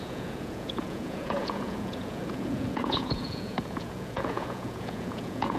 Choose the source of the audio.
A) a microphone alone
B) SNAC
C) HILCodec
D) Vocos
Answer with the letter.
D